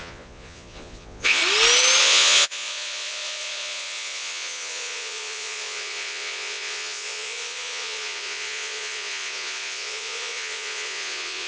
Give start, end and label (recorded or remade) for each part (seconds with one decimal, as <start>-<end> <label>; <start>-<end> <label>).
0.0-1.4 remade; 1.4-2.0 recorded; 2.0-11.5 remade